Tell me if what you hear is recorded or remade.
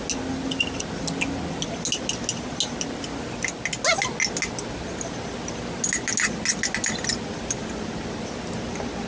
recorded